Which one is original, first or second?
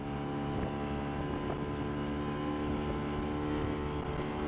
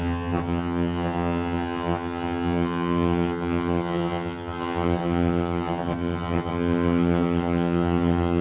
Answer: first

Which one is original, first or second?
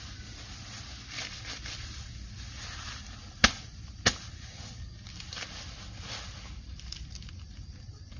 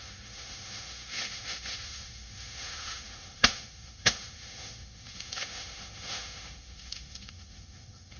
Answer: first